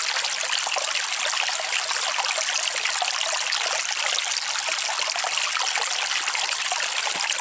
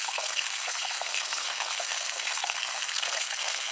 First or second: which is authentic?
first